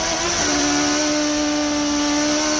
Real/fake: real